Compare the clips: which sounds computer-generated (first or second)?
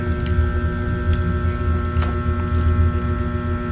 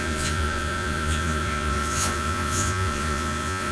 second